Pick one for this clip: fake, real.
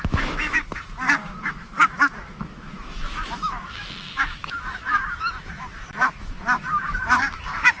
fake